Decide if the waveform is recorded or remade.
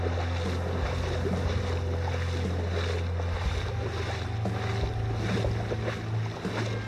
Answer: recorded